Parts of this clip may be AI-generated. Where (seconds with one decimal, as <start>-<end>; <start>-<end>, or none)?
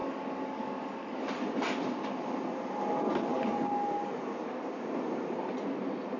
0.0-1.3; 3.3-4.0